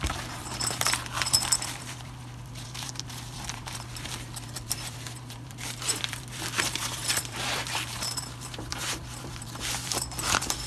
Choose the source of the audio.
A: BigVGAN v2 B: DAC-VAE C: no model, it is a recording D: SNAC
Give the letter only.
A